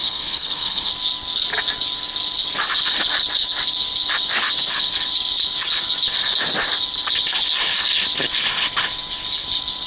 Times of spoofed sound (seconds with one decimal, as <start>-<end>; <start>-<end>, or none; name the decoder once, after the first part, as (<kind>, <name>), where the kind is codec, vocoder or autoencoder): 0.0-0.9 (codec, HILCodec)